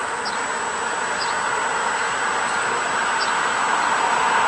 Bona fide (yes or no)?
yes